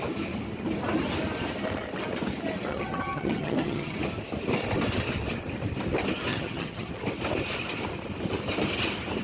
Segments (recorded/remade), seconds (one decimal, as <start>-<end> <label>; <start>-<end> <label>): 0.0-2.7 recorded; 2.7-4.0 remade; 4.0-6.3 recorded; 6.3-6.9 remade; 6.9-9.2 recorded